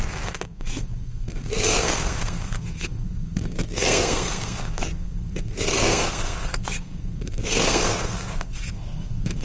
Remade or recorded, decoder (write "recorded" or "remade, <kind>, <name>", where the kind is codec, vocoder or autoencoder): remade, codec, SNAC